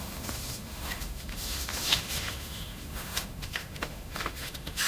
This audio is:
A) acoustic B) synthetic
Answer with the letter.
B